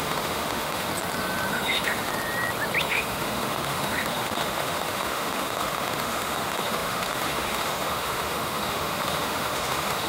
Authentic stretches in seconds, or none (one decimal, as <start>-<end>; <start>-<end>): 0.9-1.5; 2.1-2.8